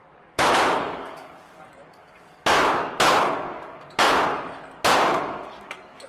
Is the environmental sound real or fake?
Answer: fake